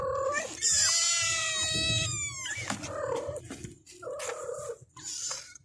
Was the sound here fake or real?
real